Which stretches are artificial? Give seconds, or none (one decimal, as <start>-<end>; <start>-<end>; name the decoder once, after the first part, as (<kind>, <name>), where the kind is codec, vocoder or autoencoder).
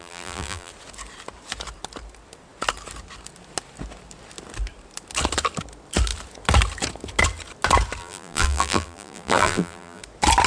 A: 0.0-0.7 (vocoder, BigVGAN v2); 8.0-10.0